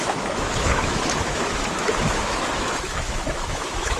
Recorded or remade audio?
remade